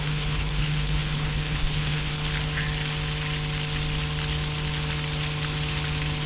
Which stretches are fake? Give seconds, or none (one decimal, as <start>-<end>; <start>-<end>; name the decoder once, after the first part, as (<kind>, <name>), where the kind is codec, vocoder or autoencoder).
0.0-2.1 (codec, HILCodec)